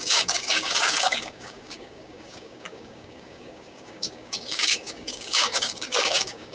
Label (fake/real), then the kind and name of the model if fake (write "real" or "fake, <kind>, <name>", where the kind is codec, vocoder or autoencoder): fake, codec, DAC